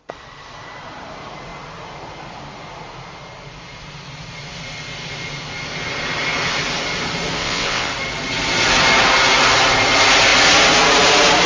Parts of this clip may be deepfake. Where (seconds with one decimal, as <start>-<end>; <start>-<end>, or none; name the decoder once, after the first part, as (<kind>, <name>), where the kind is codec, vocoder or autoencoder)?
7.4-7.9 (vocoder, WaveNeXt)